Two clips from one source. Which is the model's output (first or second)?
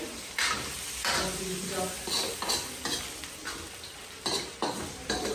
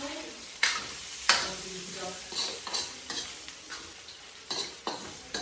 second